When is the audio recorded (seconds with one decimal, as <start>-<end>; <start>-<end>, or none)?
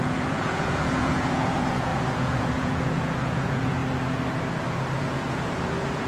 3.8-5.0